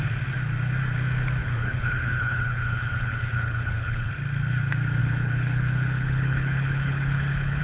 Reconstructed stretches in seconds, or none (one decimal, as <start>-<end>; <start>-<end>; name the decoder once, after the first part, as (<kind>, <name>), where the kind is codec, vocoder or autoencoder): 1.4-4.1 (codec, HILCodec); 5.0-7.6